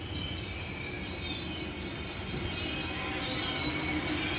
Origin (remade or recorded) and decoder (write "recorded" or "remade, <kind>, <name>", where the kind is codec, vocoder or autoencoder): recorded